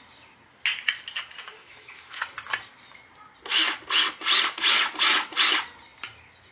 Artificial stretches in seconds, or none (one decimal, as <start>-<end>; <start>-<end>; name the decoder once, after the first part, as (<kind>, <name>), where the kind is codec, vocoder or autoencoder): 1.6-2.2 (autoencoder, DAC-VAE)